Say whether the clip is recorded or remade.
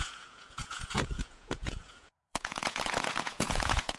remade